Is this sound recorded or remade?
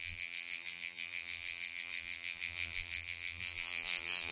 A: remade